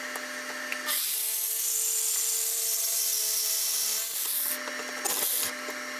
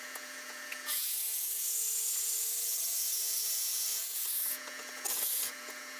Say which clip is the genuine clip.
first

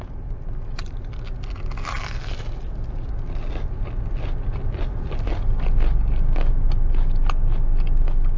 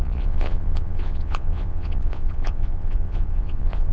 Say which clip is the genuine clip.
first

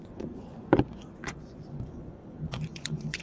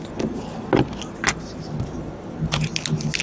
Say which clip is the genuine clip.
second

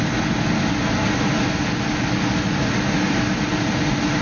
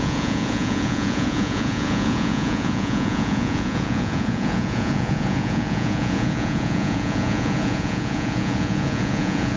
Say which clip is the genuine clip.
first